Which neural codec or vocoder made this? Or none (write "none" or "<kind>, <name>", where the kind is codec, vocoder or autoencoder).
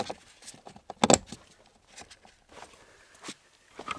none